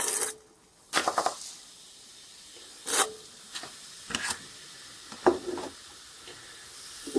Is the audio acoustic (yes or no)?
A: yes